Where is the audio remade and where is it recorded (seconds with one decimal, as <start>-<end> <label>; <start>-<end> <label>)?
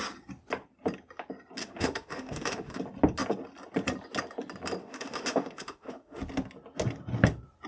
0.0-1.6 recorded; 1.6-2.8 remade; 2.8-4.8 recorded; 4.8-6.2 remade; 6.2-7.7 recorded